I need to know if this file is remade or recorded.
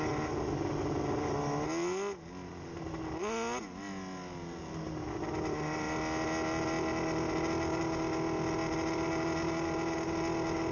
recorded